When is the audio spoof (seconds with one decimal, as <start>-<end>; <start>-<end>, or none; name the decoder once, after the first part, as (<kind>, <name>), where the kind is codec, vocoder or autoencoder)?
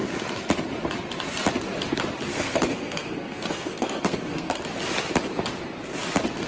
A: 2.3-4.6 (codec, SNAC)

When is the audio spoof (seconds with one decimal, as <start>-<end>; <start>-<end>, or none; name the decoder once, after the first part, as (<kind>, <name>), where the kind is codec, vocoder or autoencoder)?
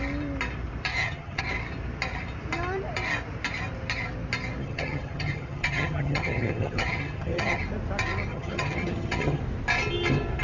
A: 0.9-1.4 (vocoder, HiFi-GAN); 4.6-7.6; 8.3-9.4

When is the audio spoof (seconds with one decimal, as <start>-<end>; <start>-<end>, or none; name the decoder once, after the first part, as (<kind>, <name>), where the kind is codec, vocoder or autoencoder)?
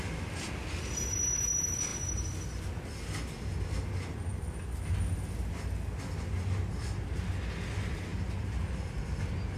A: none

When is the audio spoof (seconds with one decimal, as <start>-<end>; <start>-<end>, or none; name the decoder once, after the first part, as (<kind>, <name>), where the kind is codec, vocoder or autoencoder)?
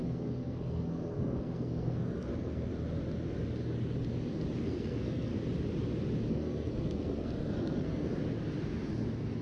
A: 0.0-2.7 (codec, SNAC); 4.6-5.3; 6.3-8.1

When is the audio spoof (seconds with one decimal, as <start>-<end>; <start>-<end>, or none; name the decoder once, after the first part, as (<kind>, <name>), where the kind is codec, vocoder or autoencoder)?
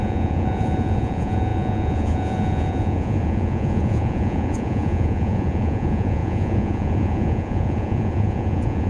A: 0.0-8.9 (vocoder, Vocos)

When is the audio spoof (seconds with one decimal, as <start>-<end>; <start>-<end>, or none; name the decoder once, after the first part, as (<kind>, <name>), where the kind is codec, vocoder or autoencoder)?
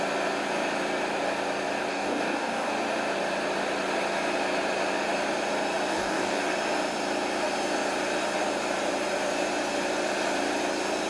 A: 1.9-2.7 (codec, DAC); 5.9-6.4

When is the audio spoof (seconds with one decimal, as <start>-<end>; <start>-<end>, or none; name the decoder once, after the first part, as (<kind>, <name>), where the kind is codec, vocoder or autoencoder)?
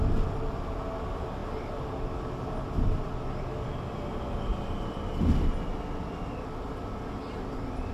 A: 4.5-5.6 (vocoder, BigVGAN v2)